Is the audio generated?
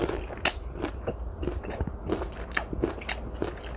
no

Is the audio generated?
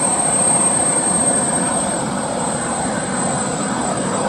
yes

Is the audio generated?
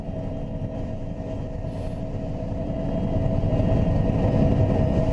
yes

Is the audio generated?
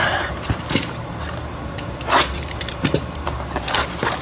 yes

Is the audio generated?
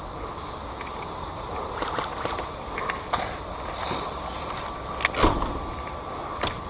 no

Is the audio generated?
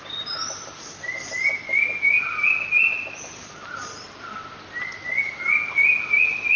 no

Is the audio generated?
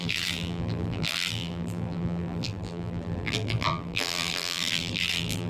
yes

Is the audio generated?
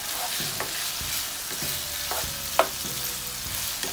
no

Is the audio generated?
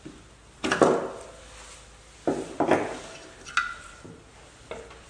no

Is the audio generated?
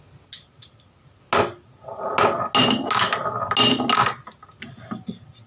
no